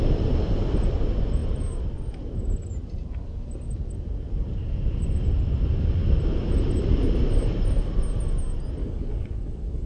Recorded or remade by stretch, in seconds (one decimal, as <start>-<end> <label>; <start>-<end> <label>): 0.0-8.8 recorded; 8.8-9.9 remade